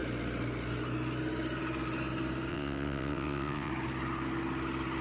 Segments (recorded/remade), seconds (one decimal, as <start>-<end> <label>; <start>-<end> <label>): 0.0-2.5 recorded; 2.5-3.7 remade; 3.7-5.0 recorded